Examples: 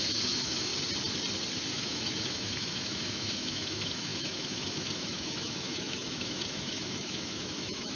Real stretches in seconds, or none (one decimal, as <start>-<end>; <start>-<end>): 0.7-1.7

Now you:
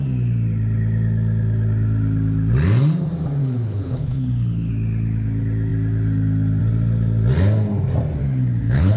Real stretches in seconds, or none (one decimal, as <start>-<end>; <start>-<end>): 0.0-3.4; 4.7-8.2

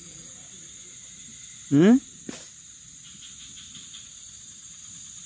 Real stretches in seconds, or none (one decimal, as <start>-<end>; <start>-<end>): 1.3-1.8

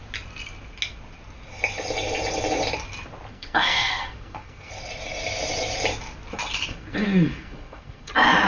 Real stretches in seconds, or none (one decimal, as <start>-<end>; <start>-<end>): 0.0-3.3; 4.7-6.7; 8.1-8.5

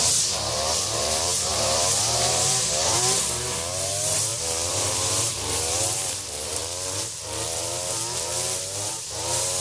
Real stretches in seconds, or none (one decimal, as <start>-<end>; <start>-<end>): 6.6-8.6

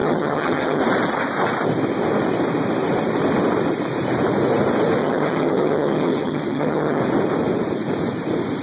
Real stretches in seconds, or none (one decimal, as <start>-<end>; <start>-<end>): 0.8-5.0; 7.0-8.6

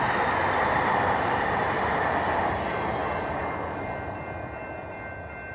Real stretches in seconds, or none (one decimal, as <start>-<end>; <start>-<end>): 0.0-5.5

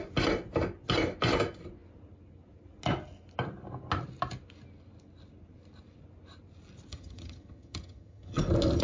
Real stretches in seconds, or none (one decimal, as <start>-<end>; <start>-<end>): 0.0-6.9; 8.4-8.8